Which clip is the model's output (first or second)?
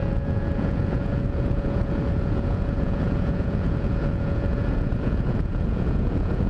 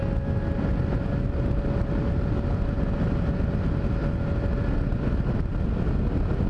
first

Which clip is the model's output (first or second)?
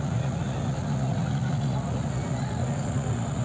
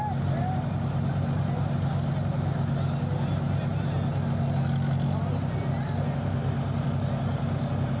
first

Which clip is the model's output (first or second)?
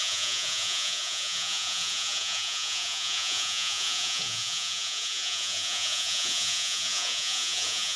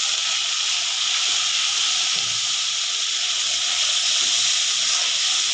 first